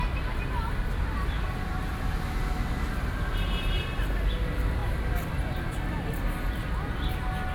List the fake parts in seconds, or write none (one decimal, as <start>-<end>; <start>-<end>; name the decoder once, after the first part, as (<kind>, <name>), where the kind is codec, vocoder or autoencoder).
none